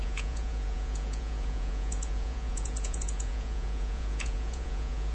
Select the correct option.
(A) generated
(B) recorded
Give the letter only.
A